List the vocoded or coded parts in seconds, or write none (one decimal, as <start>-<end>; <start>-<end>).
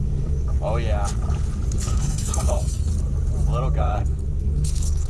0.0-0.5; 1.8-2.9; 3.8-5.1